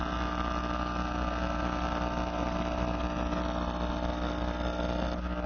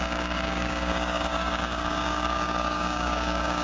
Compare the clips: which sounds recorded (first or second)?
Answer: first